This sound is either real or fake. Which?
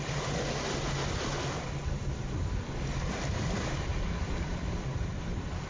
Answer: real